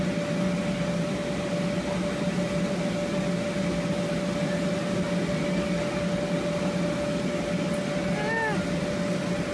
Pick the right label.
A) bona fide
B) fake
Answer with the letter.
A